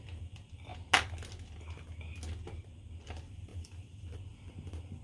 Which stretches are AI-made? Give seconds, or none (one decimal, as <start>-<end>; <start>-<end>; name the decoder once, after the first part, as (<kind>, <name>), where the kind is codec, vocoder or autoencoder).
0.0-0.7 (vocoder, BigVGAN v2); 3.0-5.0